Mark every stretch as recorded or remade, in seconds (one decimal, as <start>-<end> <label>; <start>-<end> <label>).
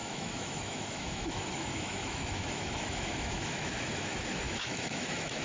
0.0-5.4 remade